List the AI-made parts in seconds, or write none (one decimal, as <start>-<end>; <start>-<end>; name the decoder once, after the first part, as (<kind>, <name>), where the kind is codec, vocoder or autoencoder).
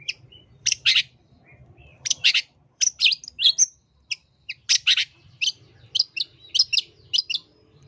0.0-3.2 (vocoder, BigVGAN v2); 4.1-4.6; 7.2-7.9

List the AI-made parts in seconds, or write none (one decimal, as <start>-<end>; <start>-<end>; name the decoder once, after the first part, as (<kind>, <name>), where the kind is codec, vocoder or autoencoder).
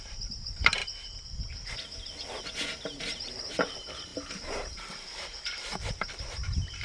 0.0-0.8 (vocoder, BigVGAN v2); 3.0-6.8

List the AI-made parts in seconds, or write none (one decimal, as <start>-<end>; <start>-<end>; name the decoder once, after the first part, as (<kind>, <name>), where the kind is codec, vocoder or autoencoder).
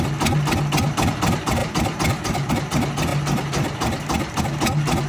1.6-2.5 (vocoder, BigVGAN v2)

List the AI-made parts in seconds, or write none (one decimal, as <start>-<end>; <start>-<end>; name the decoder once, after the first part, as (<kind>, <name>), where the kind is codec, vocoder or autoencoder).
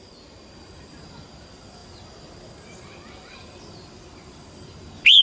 0.0-5.2 (vocoder, BigVGAN v2)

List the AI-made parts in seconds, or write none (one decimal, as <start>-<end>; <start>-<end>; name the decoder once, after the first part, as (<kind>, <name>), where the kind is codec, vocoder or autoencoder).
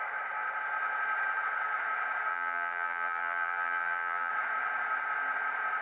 2.3-4.3 (vocoder, BigVGAN v2)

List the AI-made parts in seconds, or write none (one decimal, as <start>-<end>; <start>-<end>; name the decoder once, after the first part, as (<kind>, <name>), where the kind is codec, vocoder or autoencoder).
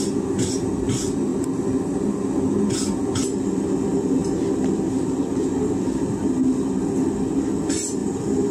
8.0-8.5 (vocoder, BigVGAN v2)